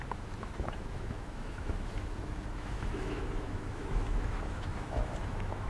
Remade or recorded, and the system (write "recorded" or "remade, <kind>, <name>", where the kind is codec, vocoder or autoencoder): remade, autoencoder, DAC-VAE